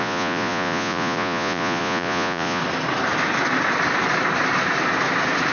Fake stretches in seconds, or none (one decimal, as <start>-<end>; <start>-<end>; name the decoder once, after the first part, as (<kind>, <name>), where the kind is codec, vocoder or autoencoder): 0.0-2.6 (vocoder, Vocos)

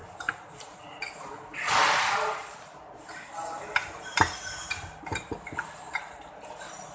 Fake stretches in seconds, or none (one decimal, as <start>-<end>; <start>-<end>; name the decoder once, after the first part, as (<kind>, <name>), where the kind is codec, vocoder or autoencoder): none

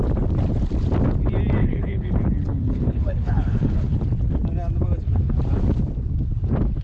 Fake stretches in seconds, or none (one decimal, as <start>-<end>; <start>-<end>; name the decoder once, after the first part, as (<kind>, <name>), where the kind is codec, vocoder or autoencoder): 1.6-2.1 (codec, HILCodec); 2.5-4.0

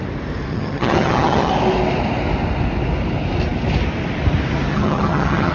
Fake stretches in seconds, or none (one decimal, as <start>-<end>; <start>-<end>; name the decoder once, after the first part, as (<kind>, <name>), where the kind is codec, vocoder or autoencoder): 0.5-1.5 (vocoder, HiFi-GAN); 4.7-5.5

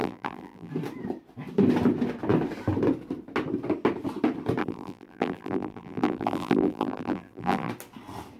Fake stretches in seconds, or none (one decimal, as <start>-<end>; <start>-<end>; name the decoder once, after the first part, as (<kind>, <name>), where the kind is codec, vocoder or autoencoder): 0.0-0.7 (vocoder, BigVGAN v2); 4.6-7.7

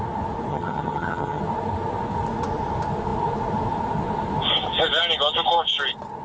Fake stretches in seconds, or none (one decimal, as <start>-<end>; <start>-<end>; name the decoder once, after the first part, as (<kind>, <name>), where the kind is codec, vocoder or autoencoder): 0.5-1.4 (vocoder, HiFi-GAN)

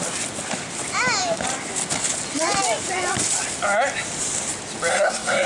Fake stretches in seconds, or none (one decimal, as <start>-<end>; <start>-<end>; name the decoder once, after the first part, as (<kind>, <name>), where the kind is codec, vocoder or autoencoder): 4.9-5.5 (codec, SNAC)

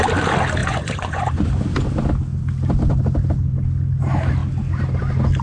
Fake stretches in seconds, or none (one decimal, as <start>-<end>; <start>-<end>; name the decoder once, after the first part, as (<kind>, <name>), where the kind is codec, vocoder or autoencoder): 0.6-1.5 (vocoder, Vocos)